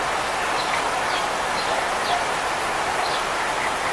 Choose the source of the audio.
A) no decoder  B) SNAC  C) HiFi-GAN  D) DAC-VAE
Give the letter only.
A